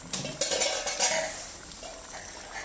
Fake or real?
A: real